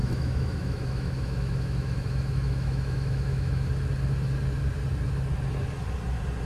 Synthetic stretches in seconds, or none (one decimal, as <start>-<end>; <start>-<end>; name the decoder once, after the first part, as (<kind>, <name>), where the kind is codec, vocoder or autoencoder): 0.0-3.7 (autoencoder, DAC-VAE)